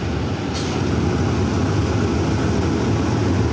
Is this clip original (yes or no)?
yes